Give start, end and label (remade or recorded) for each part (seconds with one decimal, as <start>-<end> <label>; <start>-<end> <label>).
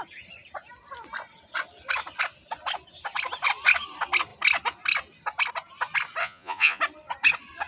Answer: 0.0-6.2 recorded; 6.2-6.8 remade; 6.8-7.7 recorded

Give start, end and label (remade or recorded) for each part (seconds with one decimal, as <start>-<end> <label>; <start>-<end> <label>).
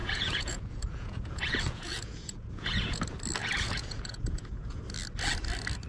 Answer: 0.0-3.0 remade; 3.0-3.4 recorded; 3.4-4.8 remade; 4.8-5.9 recorded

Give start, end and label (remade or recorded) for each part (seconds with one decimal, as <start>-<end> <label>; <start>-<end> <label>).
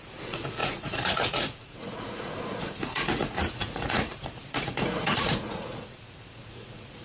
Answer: 0.0-7.0 remade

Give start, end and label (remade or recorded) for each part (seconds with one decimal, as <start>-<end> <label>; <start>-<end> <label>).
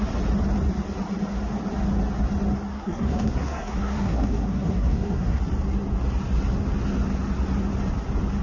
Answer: 0.0-2.7 recorded; 2.7-5.4 remade; 5.4-8.4 recorded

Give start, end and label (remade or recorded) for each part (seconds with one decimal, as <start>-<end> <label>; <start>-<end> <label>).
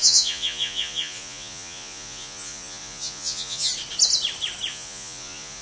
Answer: 0.0-3.7 remade; 3.7-4.7 recorded; 4.7-5.6 remade